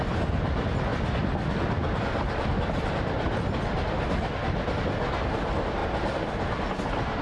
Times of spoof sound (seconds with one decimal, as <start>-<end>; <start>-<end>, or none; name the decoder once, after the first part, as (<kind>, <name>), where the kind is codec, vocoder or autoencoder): none